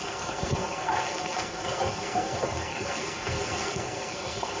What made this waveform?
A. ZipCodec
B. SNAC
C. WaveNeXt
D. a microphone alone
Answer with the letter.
B